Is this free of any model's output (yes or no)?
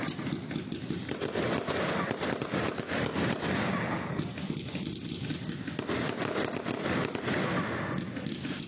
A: yes